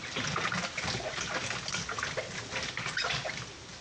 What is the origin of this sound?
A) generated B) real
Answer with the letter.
B